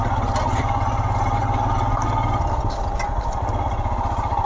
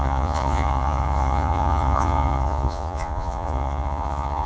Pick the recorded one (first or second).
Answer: first